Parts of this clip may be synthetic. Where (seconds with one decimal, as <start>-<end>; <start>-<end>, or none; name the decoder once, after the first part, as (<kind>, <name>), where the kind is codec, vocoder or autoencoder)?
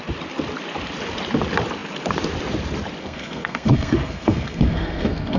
3.0-5.4 (codec, SNAC)